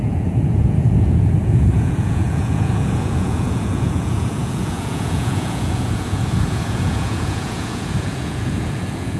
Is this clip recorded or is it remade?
remade